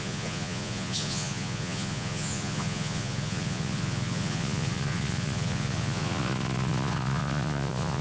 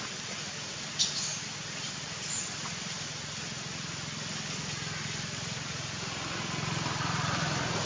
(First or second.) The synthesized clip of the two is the first